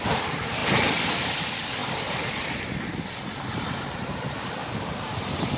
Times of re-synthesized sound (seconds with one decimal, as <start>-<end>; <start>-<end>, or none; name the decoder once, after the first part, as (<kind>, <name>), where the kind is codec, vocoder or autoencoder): none